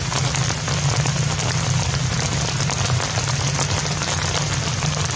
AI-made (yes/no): no